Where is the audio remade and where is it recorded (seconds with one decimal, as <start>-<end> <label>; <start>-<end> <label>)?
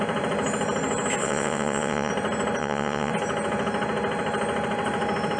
0.0-1.2 recorded; 1.2-2.1 remade; 2.1-2.6 recorded; 2.6-3.1 remade; 3.1-5.4 recorded